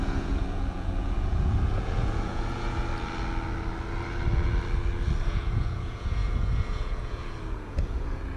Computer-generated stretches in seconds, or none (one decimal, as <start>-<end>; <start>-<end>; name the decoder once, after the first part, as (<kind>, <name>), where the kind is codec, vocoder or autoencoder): 0.0-2.9 (vocoder, Vocos); 5.2-8.4